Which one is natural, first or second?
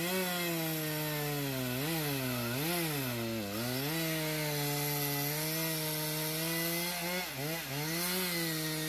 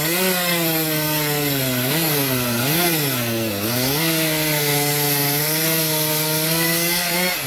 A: first